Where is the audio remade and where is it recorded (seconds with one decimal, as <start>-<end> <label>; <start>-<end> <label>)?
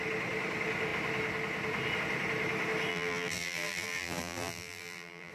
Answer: 0.0-2.9 recorded; 2.9-5.3 remade